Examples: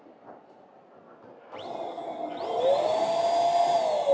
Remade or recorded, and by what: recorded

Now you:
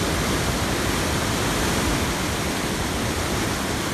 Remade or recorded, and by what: recorded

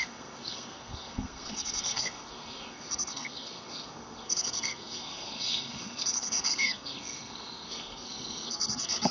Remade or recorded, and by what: remade, codec, SNAC